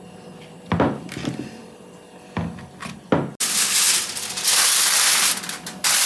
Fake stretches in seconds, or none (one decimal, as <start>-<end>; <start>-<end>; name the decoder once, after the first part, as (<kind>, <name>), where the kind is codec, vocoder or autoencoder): none